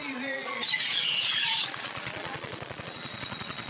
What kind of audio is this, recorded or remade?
remade